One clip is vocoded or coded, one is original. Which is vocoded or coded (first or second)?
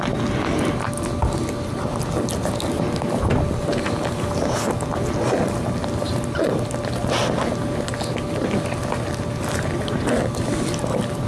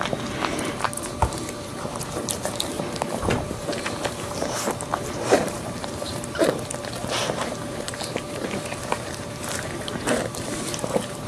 second